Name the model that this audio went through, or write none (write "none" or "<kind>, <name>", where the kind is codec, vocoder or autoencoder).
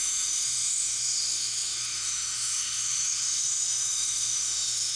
autoencoder, DAC-VAE